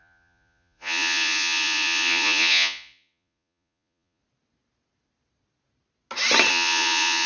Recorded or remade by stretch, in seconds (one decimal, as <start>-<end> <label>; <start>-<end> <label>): 0.0-4.2 remade; 4.2-6.5 recorded; 6.5-7.3 remade